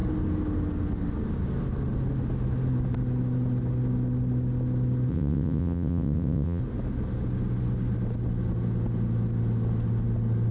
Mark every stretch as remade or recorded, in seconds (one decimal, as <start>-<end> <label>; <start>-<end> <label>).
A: 0.0-5.1 recorded; 5.1-6.6 remade; 6.6-10.5 recorded